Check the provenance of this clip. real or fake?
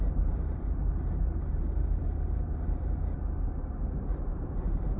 fake